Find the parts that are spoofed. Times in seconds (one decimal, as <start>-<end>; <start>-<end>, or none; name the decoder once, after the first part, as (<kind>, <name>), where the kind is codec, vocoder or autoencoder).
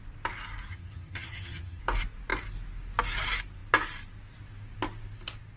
0.7-1.8 (vocoder, HiFi-GAN)